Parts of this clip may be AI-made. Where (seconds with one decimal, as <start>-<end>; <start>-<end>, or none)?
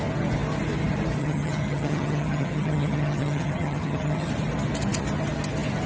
1.2-4.3